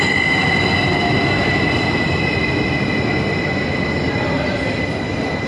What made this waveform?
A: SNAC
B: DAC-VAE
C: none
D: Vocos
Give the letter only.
C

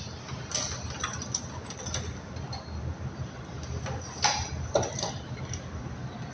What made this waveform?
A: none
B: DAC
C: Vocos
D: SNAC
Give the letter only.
A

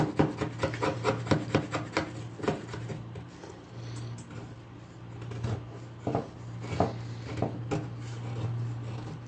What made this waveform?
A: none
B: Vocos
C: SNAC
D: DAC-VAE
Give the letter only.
A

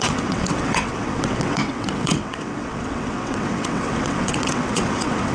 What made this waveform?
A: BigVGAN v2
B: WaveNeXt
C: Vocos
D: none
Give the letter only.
B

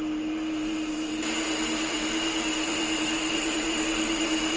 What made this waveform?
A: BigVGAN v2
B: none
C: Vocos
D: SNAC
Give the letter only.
A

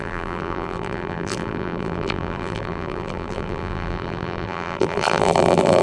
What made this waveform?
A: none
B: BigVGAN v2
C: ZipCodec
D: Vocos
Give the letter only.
B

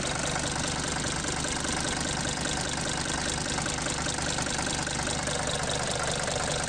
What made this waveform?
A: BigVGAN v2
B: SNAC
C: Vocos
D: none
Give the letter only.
D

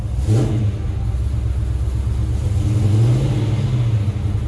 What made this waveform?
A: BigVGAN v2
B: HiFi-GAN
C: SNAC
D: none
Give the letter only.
D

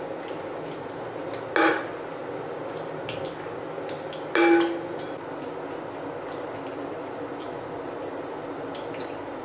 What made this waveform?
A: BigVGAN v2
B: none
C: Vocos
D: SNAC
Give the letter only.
B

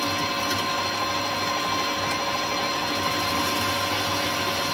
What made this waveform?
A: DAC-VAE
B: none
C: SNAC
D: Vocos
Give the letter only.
B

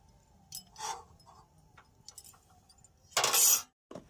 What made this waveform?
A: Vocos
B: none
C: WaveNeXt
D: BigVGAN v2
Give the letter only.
B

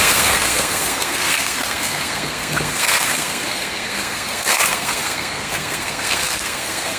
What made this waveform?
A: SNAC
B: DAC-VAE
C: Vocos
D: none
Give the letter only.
A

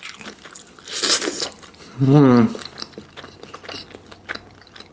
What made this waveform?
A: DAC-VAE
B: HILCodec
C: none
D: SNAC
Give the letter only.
C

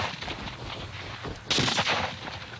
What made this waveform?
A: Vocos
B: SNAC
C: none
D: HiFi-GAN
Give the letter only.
C